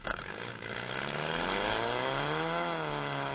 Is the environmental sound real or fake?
fake